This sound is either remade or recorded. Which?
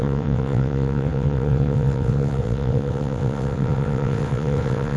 remade